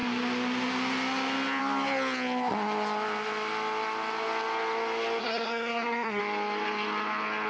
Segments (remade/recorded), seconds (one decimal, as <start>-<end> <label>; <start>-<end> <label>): 0.0-5.2 recorded; 5.2-6.2 remade; 6.2-7.5 recorded